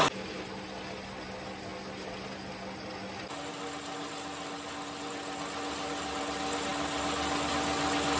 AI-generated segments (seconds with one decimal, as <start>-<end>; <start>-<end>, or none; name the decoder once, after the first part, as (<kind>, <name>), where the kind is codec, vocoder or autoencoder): none